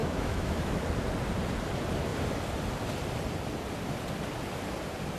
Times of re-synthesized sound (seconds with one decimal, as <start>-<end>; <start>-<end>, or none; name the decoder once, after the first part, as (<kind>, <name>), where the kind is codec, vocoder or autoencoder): 0.0-0.8 (autoencoder, DAC-VAE)